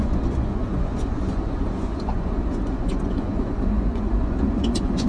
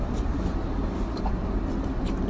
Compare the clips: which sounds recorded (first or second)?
second